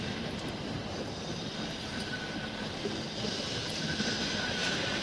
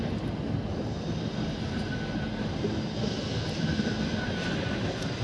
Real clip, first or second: second